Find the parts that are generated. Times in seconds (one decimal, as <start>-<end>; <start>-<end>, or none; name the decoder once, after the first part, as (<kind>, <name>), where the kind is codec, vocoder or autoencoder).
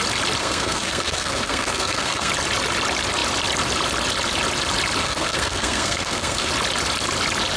0.4-2.3 (codec, SNAC); 5.0-6.5